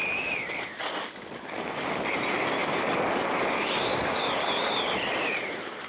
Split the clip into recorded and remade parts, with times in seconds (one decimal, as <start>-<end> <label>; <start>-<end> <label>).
0.0-5.9 recorded